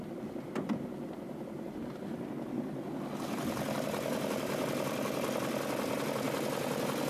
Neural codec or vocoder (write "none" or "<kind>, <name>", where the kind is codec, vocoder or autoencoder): none